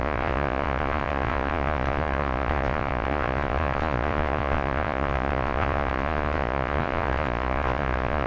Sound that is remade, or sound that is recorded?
remade